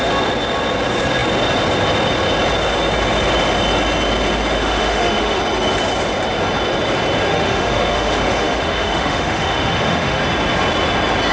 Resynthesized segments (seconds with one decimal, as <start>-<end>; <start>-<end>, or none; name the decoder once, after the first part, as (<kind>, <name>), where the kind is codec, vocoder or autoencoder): 4.5-5.4 (autoencoder, DAC-VAE); 7.3-10.2